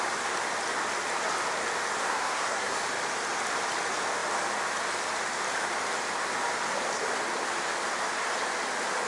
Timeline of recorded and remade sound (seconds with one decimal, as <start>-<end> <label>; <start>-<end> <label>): 0.0-2.0 recorded; 2.0-2.8 remade; 2.8-9.1 recorded

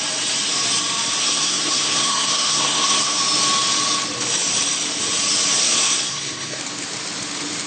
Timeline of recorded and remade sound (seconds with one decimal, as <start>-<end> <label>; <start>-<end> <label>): 0.0-1.2 recorded; 1.2-3.2 remade; 3.2-5.6 recorded; 5.6-6.6 remade; 6.6-7.7 recorded

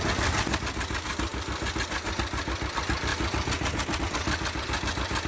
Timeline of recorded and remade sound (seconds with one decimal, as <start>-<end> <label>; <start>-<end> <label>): 0.0-5.3 recorded

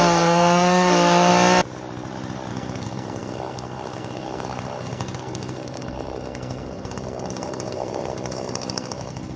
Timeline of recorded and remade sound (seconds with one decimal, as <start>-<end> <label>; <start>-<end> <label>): 0.0-1.3 remade; 1.3-2.5 recorded; 2.5-9.4 remade

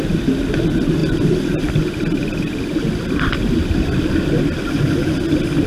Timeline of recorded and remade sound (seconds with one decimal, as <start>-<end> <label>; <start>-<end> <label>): 0.0-5.7 recorded

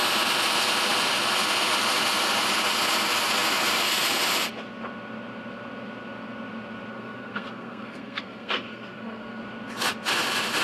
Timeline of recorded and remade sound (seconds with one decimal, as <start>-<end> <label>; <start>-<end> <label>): 0.0-6.9 recorded; 6.9-9.4 remade; 9.4-10.6 recorded

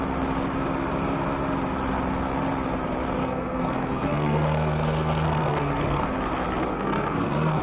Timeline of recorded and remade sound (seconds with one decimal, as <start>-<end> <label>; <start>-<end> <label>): 0.0-3.2 recorded; 3.2-6.2 remade; 6.2-6.7 recorded; 6.7-7.6 remade